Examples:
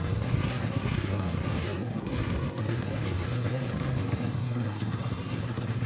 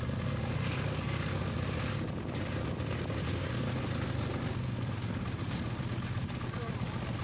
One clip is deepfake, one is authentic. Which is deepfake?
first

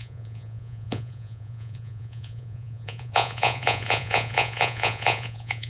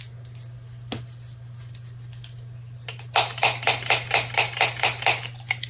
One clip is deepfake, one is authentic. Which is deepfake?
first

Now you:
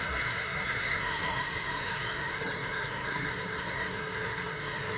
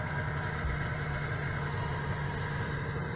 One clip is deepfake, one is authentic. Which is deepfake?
first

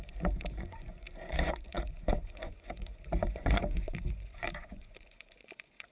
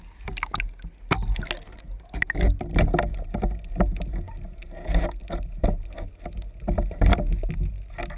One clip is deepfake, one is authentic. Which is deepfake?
first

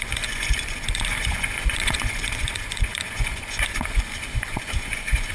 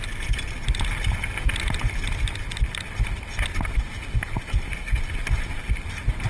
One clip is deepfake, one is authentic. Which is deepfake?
first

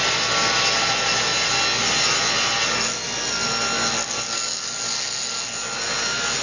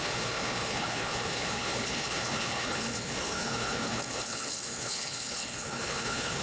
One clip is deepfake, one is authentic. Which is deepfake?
second